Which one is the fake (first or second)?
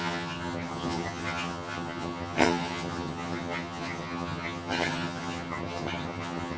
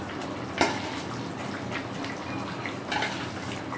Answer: first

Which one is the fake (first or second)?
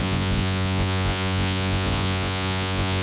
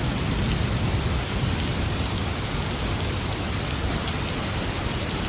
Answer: first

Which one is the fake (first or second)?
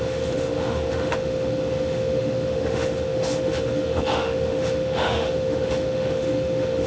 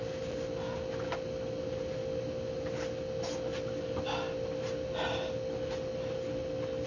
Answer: first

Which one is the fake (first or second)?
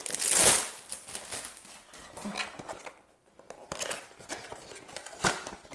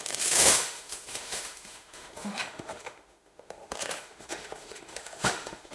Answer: second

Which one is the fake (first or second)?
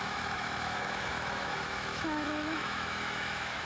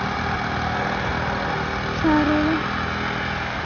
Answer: first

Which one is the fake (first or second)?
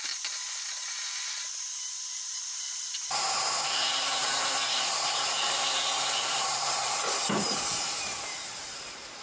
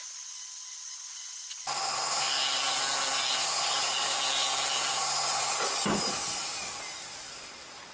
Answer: first